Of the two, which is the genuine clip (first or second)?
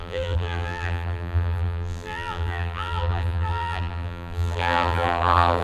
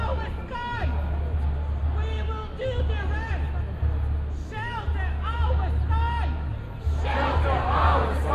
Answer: second